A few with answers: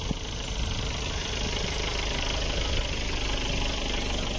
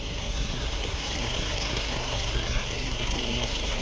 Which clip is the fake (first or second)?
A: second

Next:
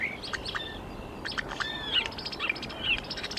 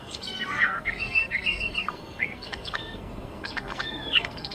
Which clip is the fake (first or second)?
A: second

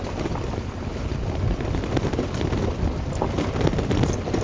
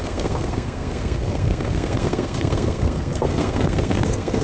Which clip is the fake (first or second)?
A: second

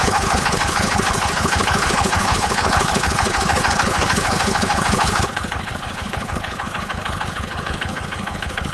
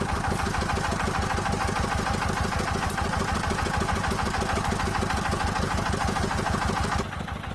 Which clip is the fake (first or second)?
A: first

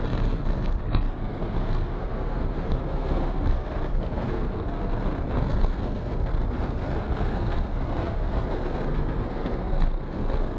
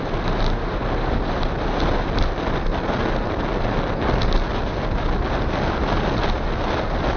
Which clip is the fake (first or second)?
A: first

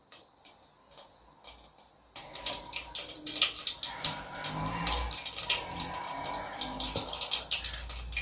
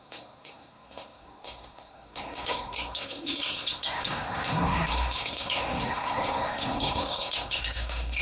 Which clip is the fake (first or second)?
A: second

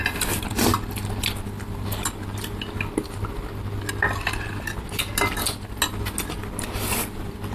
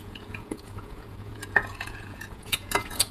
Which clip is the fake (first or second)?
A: second